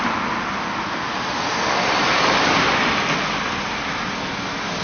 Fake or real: real